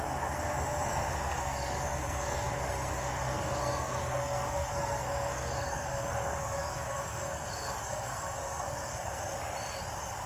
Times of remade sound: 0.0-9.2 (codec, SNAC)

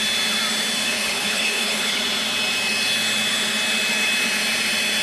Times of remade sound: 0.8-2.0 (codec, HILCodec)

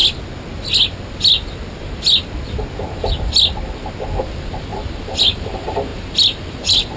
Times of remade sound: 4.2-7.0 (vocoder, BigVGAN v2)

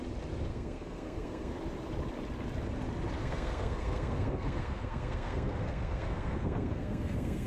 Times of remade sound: 0.5-1.5 (codec, SNAC); 3.2-7.5